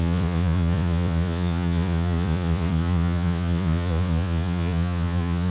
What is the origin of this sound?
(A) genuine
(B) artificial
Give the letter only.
B